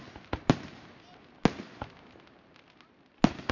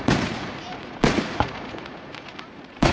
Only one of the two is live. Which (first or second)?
first